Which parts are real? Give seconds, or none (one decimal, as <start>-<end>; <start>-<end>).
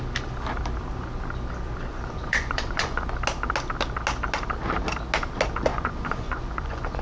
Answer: 0.0-1.9; 3.0-5.7